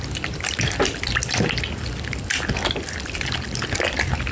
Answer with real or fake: real